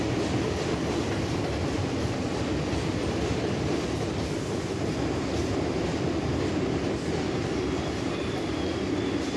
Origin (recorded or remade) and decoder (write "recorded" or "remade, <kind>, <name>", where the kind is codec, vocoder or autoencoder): remade, vocoder, BigVGAN v2